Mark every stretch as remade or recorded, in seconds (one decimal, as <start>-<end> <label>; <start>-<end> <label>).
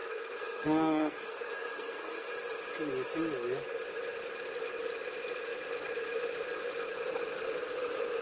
0.0-2.3 remade; 2.3-8.2 recorded